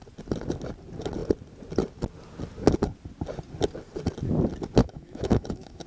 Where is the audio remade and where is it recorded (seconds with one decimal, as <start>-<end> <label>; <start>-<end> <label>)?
0.0-4.8 recorded; 4.8-5.9 remade

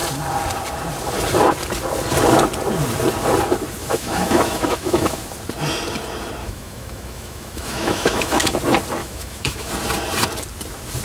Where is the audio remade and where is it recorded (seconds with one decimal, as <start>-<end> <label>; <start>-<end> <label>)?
0.0-3.8 recorded; 3.8-5.2 remade; 5.2-6.4 recorded; 6.4-8.6 remade; 8.6-9.0 recorded; 9.0-9.7 remade; 9.7-11.0 recorded

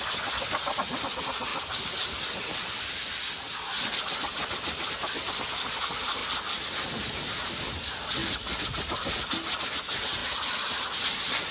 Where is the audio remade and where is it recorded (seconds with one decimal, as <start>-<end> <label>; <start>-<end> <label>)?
0.0-11.5 recorded

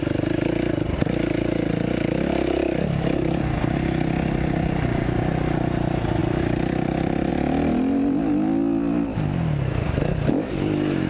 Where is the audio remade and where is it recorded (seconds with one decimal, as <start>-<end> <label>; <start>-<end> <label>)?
0.0-6.2 recorded; 6.2-7.3 remade; 7.3-11.1 recorded

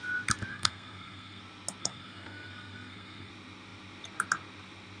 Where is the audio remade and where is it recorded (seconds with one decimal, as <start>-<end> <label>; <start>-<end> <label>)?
0.0-0.5 recorded; 0.5-1.4 remade; 1.4-1.8 recorded; 1.8-3.3 remade; 3.3-5.0 recorded

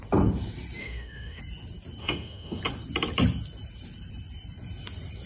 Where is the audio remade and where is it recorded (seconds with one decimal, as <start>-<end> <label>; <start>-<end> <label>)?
0.0-0.8 recorded; 0.8-1.4 remade; 1.4-2.0 recorded; 2.0-2.6 remade; 2.6-5.3 recorded

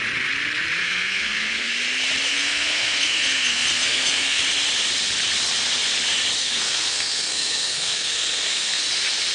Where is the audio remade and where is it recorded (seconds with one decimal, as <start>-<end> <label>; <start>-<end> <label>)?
0.0-0.8 recorded; 0.8-1.7 remade; 1.7-2.3 recorded; 2.3-4.4 remade; 4.4-6.4 recorded; 6.4-8.8 remade; 8.8-9.3 recorded

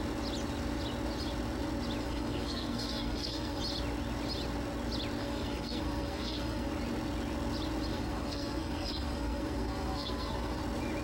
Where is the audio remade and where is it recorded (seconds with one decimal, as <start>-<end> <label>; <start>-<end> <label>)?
0.0-2.0 recorded; 2.0-3.6 remade; 3.6-5.2 recorded; 5.2-6.7 remade; 6.7-7.9 recorded; 7.9-10.6 remade; 10.6-11.0 recorded